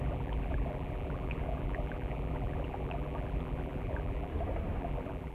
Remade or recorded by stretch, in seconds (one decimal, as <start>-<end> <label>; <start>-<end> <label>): 0.0-4.3 remade; 4.3-4.8 recorded; 4.8-5.3 remade